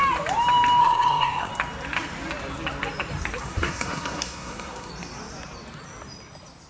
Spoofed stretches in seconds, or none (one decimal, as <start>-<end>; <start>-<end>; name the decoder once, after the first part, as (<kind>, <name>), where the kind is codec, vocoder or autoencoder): 0.8-1.5 (codec, SNAC); 3.4-4.9